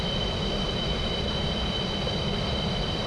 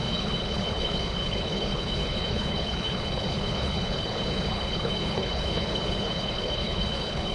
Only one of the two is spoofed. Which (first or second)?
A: second